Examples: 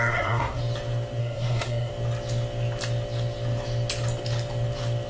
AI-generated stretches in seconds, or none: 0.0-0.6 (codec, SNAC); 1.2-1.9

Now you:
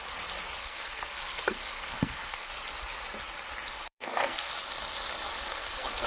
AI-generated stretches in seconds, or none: 0.6-2.5 (codec, SNAC); 3.7-4.5; 5.3-6.1

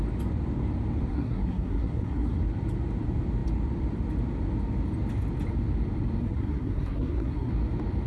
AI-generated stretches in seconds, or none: 1.1-2.4 (codec, SNAC); 6.2-7.5

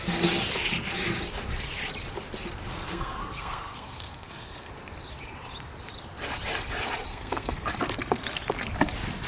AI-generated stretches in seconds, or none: 2.7-4.7 (codec, SNAC); 7.1-7.8

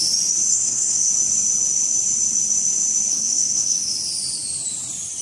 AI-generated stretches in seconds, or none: 0.5-1.1 (codec, SNAC); 3.1-3.9